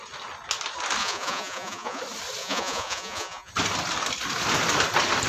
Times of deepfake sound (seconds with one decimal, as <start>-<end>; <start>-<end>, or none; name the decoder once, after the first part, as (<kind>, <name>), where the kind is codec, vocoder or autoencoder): 1.0-2.0 (vocoder, Vocos); 2.4-3.5